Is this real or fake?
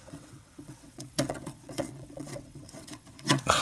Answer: fake